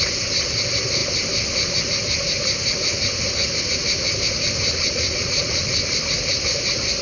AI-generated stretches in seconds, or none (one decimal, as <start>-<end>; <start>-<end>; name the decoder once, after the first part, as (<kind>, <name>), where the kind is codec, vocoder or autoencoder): 4.8-5.7 (vocoder, Vocos)